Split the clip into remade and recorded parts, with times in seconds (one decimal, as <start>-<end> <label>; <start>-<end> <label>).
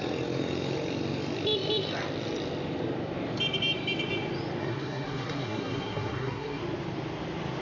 0.0-4.6 recorded; 4.6-6.6 remade; 6.6-7.6 recorded